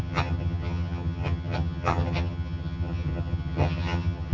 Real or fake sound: fake